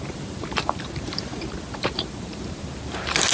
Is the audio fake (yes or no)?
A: yes